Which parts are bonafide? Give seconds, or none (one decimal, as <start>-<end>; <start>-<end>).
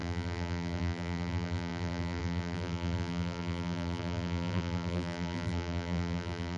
none